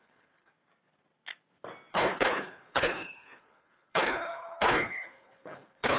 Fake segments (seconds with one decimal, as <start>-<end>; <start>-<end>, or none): 0.0-0.5; 1.9-6.0